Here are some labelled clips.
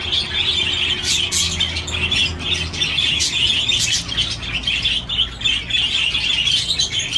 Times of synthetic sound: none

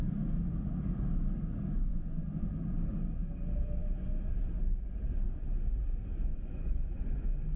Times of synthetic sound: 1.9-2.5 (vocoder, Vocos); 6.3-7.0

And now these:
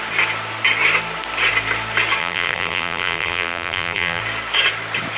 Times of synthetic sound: 2.2-4.2 (vocoder, BigVGAN v2)

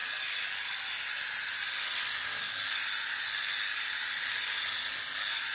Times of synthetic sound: none

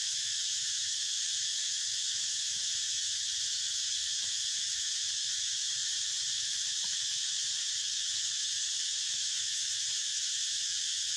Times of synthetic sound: 0.0-11.2 (autoencoder, DAC-VAE)

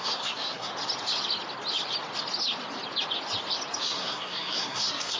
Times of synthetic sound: 0.0-0.7 (codec, SNAC); 3.8-5.2